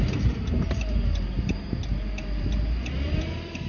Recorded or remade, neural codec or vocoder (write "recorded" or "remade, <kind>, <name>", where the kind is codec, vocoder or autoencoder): remade, vocoder, BigVGAN v2